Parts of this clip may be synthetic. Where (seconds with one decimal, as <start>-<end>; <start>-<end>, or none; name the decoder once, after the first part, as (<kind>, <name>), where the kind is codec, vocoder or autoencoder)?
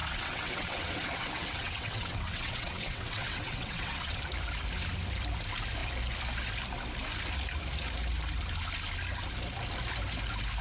0.0-4.2 (vocoder, WaveNeXt)